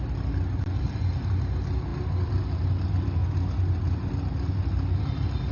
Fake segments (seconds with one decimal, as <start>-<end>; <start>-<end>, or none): 0.0-3.2; 3.7-5.5